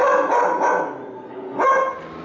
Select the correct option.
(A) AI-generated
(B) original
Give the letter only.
B